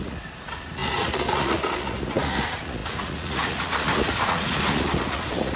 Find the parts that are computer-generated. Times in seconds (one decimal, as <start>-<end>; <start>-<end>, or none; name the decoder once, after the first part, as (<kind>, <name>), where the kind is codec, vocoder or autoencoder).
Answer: 0.0-5.6 (vocoder, Vocos)